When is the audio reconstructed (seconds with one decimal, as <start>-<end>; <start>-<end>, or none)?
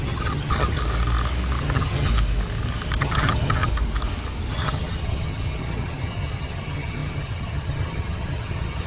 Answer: 0.0-0.8; 1.6-2.1; 3.0-3.7; 4.5-8.9